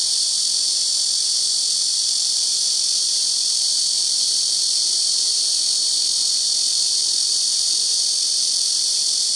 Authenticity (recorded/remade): remade